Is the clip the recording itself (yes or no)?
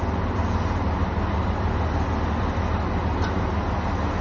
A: yes